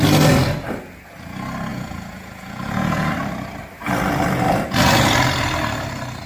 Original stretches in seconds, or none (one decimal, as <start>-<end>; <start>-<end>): 0.0-1.7; 3.1-6.3